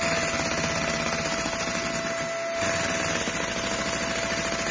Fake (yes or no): no